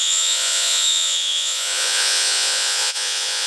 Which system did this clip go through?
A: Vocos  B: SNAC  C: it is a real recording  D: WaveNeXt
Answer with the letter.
A